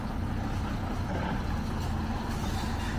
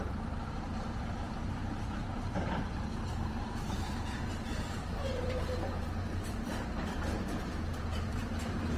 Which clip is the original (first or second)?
first